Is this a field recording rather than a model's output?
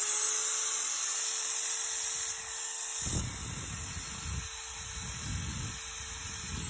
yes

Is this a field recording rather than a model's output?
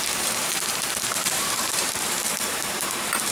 no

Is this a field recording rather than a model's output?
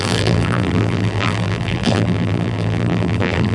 no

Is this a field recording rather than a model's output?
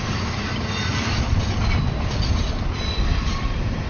no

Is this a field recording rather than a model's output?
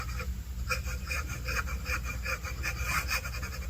no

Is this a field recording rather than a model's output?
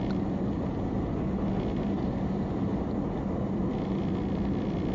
yes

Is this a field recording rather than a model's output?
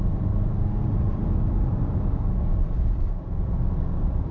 yes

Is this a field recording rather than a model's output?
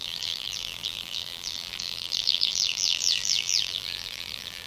no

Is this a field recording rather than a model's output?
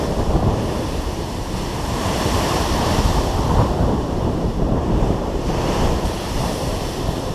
no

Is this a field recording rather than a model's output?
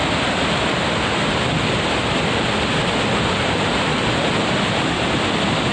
yes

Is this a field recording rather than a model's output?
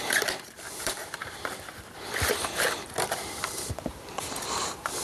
no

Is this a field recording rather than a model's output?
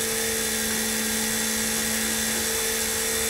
yes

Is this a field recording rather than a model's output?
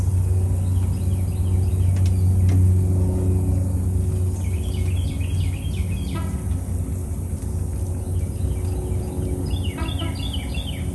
yes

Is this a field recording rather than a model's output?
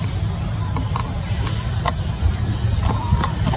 yes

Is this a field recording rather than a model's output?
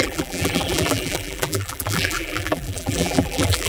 no